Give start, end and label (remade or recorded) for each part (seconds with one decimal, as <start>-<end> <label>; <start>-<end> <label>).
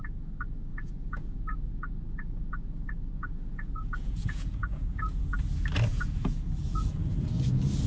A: 0.0-0.7 recorded; 0.7-5.4 remade; 5.4-5.9 recorded; 5.9-7.0 remade; 7.0-7.9 recorded